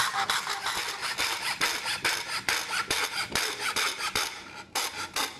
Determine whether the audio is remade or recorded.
recorded